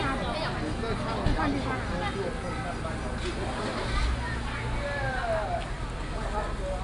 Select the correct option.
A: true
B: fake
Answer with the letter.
A